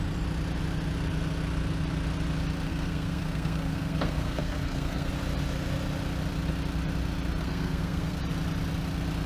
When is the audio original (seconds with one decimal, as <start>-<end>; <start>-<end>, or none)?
0.0-2.7; 5.1-7.4; 8.2-9.3